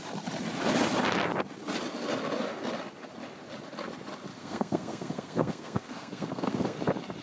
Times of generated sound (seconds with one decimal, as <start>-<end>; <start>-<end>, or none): 4.3-6.8